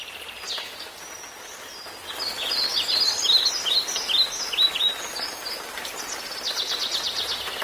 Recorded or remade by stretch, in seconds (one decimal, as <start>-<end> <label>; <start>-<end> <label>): 0.0-7.6 recorded